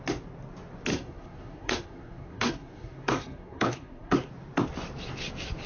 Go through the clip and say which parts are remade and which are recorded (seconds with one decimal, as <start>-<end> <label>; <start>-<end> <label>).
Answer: 0.0-0.9 recorded; 0.9-4.3 remade; 4.3-5.7 recorded